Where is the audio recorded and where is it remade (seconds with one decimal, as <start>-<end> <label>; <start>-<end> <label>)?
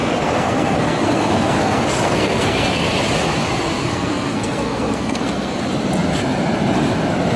0.0-2.9 remade; 2.9-3.8 recorded; 3.8-5.6 remade; 5.6-7.4 recorded